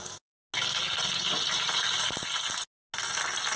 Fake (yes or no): no